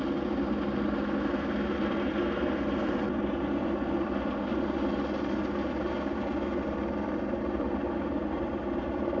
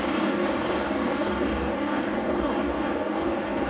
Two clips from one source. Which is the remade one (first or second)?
second